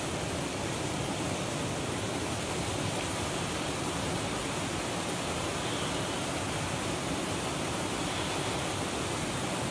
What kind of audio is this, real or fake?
real